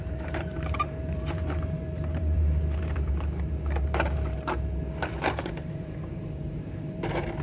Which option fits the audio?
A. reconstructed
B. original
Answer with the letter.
A